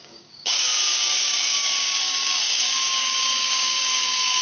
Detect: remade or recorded remade